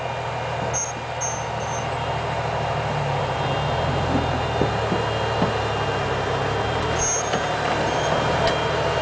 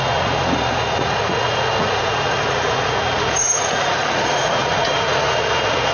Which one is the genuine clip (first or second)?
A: first